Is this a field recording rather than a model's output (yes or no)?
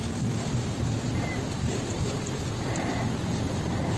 yes